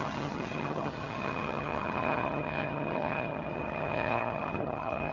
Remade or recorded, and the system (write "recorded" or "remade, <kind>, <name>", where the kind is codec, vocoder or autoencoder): remade, vocoder, HiFi-GAN